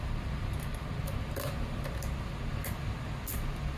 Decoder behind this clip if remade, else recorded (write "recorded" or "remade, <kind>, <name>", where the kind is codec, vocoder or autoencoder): recorded